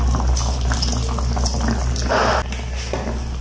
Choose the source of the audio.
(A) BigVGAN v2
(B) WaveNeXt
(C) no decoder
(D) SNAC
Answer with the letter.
C